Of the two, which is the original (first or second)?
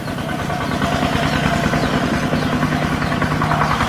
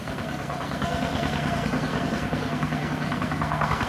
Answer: first